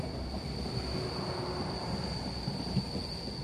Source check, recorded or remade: recorded